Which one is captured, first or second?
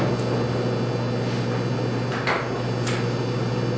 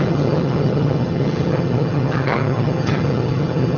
first